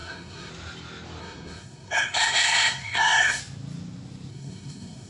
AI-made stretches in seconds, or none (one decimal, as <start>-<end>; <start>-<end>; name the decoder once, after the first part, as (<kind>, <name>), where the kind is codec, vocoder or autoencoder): 0.0-0.5 (codec, SNAC); 1.2-3.4; 4.3-5.1